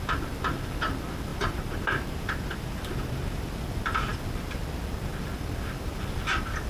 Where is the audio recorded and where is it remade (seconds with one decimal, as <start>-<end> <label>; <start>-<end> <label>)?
0.0-1.3 recorded; 1.3-3.5 remade; 3.5-6.7 recorded